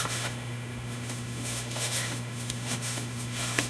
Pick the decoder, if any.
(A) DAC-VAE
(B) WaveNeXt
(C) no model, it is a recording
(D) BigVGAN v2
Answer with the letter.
A